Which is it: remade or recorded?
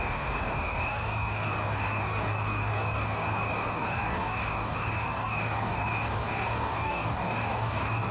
remade